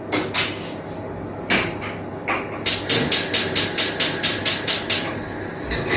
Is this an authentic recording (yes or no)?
yes